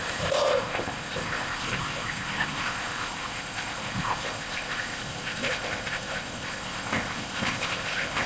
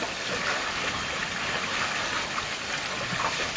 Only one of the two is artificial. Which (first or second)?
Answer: first